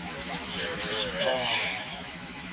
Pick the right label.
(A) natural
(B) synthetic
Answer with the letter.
B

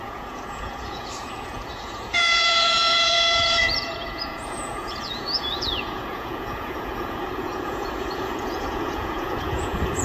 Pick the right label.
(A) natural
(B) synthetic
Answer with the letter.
B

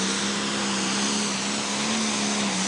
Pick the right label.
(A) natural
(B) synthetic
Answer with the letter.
A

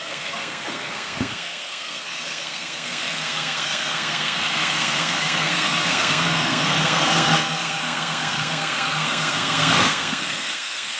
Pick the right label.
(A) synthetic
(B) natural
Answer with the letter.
A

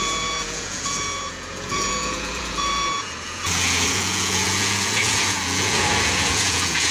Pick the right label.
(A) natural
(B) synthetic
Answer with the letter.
B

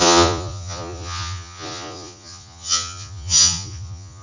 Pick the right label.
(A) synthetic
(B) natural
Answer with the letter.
A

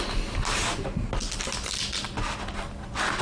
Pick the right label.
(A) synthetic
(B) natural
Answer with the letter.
B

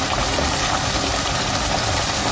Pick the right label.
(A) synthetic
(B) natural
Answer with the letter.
B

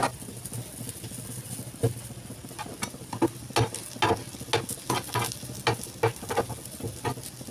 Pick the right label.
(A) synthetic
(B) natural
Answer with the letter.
B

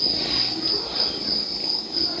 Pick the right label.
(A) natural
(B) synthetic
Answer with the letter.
A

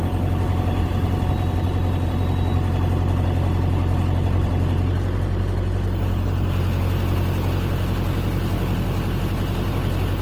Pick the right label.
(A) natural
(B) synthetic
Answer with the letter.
A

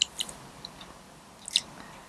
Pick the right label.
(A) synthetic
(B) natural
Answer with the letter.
B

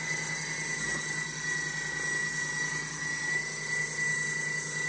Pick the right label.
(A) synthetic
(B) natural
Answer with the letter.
B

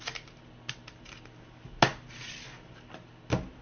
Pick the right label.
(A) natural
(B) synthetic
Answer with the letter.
A